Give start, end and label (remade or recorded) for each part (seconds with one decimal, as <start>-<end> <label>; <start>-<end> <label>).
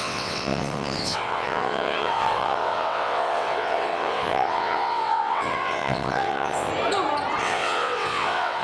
0.0-6.7 remade; 6.7-7.4 recorded; 7.4-8.6 remade